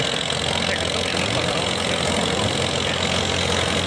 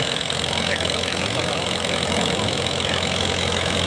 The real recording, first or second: first